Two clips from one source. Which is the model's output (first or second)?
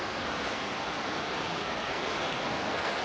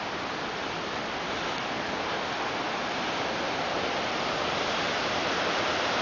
first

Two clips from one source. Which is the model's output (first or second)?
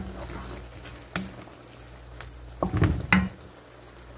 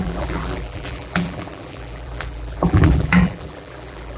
second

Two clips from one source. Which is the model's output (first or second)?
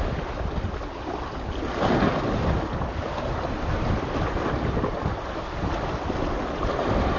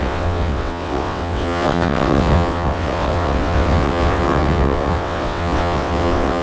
second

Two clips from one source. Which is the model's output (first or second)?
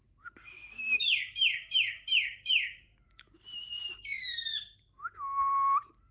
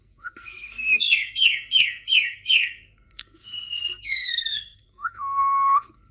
second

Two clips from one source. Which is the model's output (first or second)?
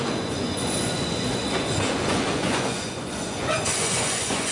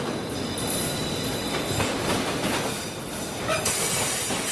first